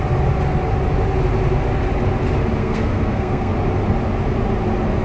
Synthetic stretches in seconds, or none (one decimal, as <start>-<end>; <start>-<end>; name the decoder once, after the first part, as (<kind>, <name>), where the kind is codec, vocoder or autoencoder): 2.6-3.5 (codec, SNAC)